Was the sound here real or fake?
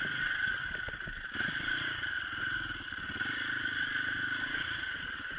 real